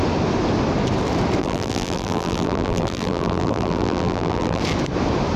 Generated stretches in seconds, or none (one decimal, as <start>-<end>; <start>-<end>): 1.4-4.6